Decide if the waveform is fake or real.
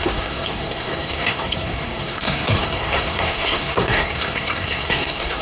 fake